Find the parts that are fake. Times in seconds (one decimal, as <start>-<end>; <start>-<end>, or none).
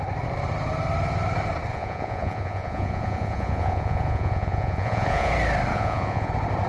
1.7-5.3; 5.7-6.3